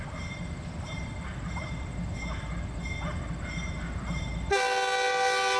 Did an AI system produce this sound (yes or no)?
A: no